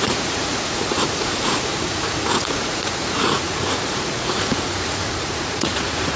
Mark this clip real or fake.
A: fake